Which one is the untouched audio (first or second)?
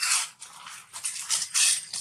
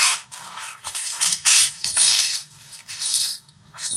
first